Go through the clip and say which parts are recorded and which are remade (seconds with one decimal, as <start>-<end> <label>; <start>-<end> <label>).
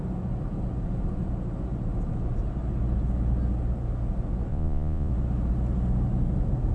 0.0-4.5 recorded; 4.5-5.1 remade; 5.1-6.7 recorded